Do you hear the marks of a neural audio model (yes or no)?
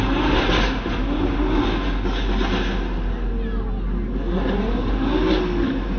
no